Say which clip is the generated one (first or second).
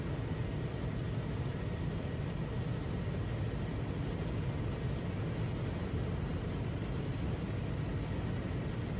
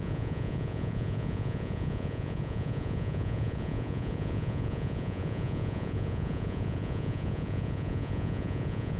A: second